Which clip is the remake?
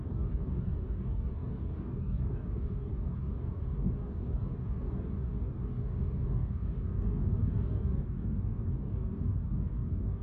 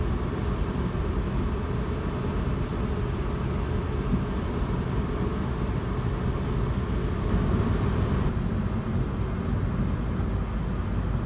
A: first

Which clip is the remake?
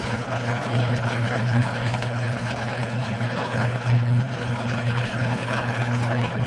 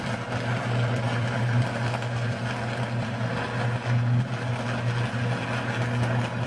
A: first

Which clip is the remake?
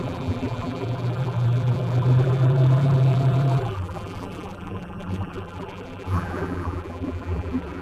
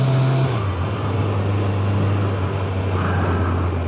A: first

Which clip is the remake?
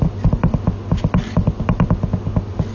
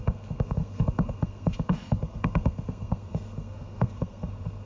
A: second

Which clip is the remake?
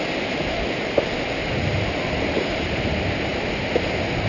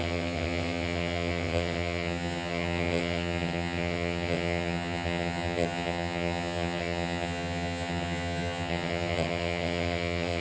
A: second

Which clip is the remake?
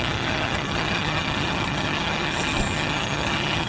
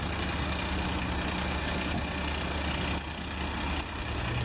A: first